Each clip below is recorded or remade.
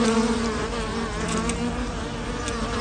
recorded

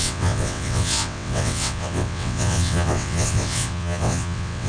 remade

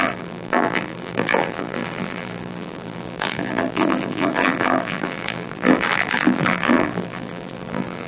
remade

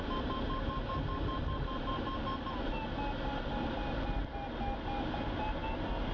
recorded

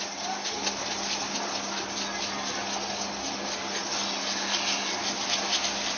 recorded